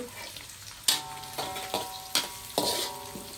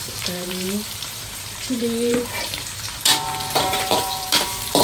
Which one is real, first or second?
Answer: first